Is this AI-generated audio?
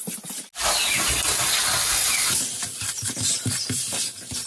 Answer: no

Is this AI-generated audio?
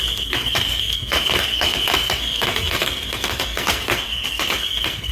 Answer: yes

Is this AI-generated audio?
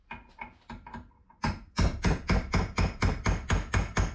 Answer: no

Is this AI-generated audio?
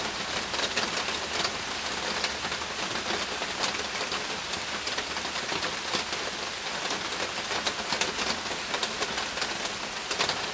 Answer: no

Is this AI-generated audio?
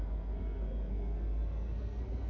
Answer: yes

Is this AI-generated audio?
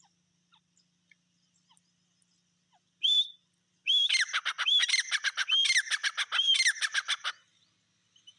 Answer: no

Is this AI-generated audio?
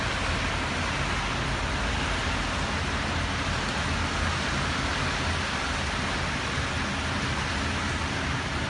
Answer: no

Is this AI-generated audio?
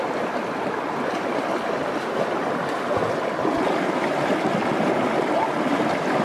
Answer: no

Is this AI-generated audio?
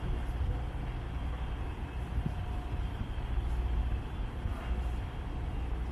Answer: no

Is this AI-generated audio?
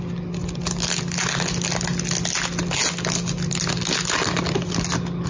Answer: no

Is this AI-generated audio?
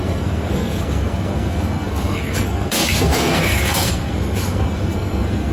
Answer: yes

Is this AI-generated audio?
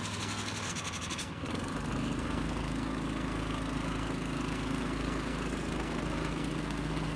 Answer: yes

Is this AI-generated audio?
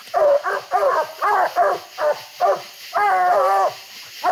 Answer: no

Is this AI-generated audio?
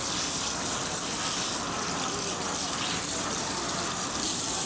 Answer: no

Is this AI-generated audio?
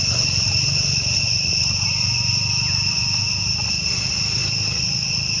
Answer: no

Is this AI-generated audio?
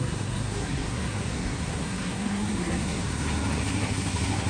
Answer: yes